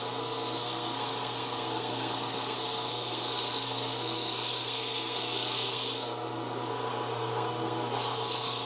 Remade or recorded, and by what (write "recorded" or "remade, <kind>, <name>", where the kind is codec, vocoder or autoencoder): remade, codec, SNAC